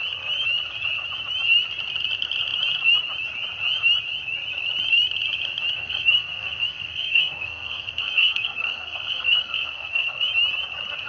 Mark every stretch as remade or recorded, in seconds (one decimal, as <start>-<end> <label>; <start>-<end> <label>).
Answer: 0.0-5.8 recorded; 5.8-10.3 remade; 10.3-11.1 recorded